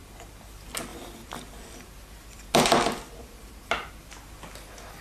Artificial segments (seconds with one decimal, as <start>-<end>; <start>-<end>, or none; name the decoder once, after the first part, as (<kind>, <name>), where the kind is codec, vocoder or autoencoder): 0.9-3.9 (vocoder, BigVGAN v2)